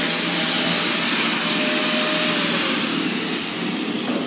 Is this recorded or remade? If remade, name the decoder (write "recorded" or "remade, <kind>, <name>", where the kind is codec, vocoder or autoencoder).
recorded